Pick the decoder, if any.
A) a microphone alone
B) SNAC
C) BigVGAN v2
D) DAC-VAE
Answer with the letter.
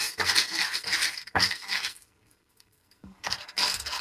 B